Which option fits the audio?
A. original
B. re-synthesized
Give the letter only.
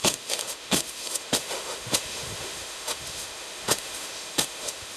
B